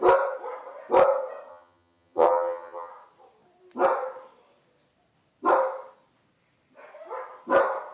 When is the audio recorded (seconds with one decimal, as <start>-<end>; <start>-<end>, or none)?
0.0-1.5; 2.9-7.9